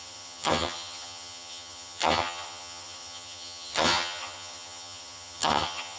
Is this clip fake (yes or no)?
yes